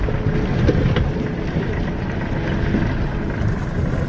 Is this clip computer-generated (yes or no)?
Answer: no